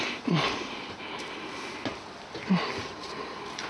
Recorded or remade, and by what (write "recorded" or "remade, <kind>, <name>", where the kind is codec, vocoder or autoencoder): recorded